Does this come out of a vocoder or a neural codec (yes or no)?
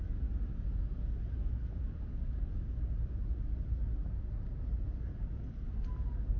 no